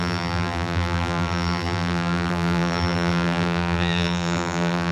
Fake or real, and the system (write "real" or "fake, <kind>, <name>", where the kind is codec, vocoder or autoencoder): fake, vocoder, BigVGAN v2